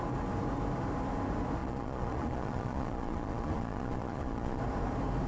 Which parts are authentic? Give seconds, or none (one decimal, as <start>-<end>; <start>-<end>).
0.0-1.6; 4.6-5.3